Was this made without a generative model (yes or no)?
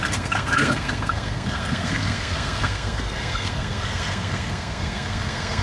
no